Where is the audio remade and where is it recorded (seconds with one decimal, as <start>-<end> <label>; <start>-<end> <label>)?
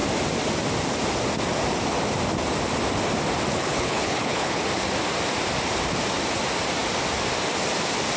0.0-3.5 recorded; 3.5-4.6 remade; 4.6-8.2 recorded